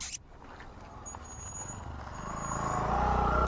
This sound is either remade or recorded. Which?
recorded